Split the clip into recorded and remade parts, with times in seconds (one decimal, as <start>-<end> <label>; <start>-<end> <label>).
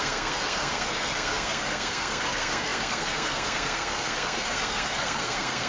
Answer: 0.0-5.7 remade